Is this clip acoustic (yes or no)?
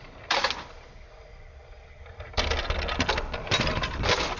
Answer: yes